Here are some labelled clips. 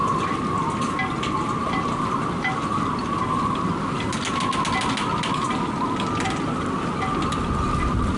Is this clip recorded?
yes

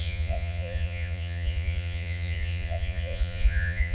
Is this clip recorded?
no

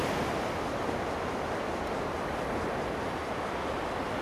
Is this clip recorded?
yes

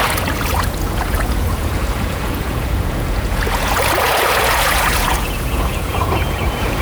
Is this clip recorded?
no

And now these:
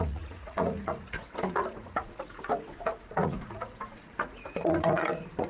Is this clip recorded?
no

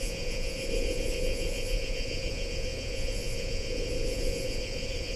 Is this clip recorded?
no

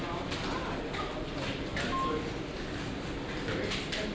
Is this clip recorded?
yes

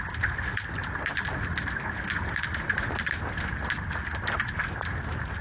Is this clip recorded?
yes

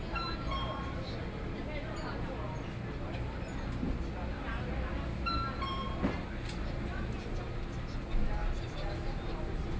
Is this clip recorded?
yes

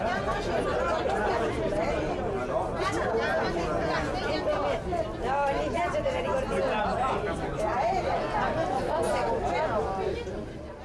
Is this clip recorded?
yes